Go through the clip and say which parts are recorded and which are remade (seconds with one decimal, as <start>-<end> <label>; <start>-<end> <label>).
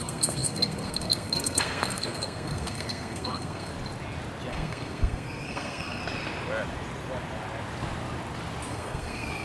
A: 0.0-3.7 remade; 3.7-4.5 recorded; 4.5-6.0 remade; 6.0-8.7 recorded; 8.7-9.4 remade